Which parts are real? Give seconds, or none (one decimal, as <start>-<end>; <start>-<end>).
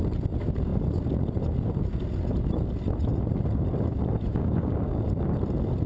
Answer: 0.0-4.3; 5.1-5.9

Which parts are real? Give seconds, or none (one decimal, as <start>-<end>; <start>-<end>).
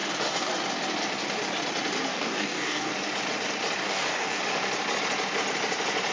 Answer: 0.0-2.1; 2.9-3.8; 4.4-6.1